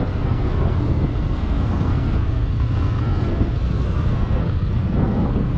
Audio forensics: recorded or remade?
remade